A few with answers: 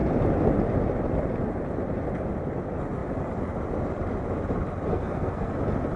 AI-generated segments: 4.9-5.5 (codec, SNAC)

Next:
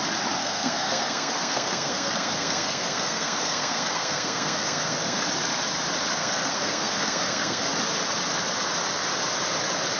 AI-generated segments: 0.4-5.2 (codec, SNAC); 6.2-7.7

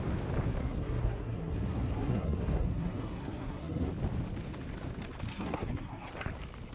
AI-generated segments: 0.6-3.9 (codec, SNAC); 5.3-6.1

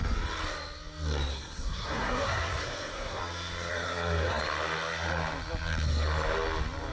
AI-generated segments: 1.3-3.2 (codec, SNAC); 3.7-4.4

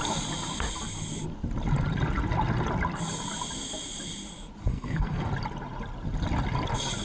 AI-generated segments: 4.7-5.3 (codec, SNAC)

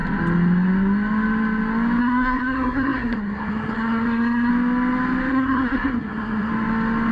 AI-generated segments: 2.0-4.5 (codec, SNAC); 5.3-6.5